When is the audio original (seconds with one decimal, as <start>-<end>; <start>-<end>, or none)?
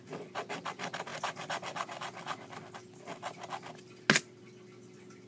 0.0-5.3